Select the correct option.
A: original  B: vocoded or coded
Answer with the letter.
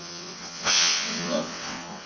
B